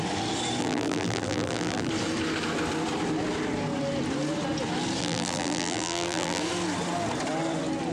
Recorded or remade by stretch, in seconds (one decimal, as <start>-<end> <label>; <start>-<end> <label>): 0.0-0.6 recorded; 0.6-1.9 remade; 1.9-5.0 recorded; 5.0-6.4 remade; 6.4-7.9 recorded

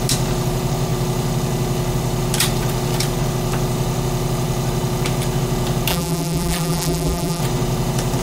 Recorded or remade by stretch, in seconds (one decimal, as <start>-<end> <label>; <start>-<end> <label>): 0.0-5.9 recorded; 5.9-7.4 remade; 7.4-8.2 recorded

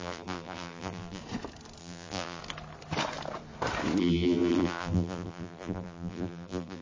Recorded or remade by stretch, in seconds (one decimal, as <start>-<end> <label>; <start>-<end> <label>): 0.0-1.2 remade; 1.2-1.8 recorded; 1.8-2.4 remade; 2.4-4.0 recorded; 4.0-6.8 remade